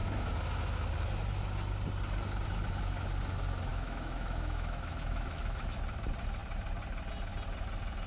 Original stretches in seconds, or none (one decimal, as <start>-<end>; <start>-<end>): 0.9-3.7; 5.6-8.1